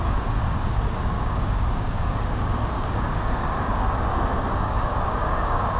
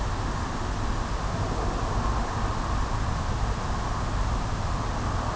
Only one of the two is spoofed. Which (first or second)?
first